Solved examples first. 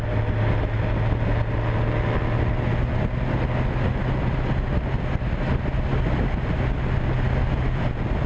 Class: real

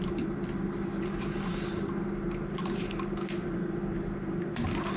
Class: real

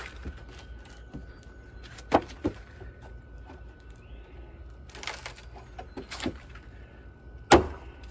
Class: real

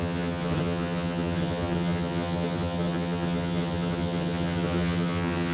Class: fake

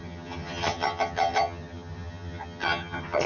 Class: fake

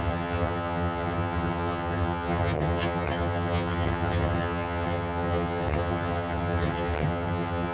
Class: fake